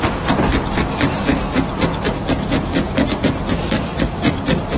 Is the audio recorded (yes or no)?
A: yes